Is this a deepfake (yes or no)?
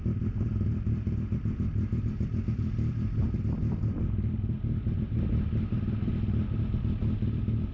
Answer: no